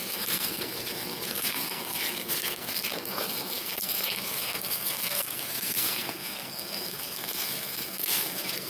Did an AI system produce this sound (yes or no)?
yes